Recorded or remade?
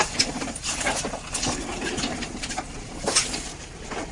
recorded